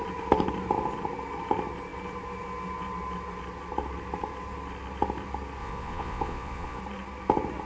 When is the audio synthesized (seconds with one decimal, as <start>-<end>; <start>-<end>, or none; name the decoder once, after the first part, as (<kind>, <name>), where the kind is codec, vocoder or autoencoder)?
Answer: 5.6-6.8 (vocoder, Vocos)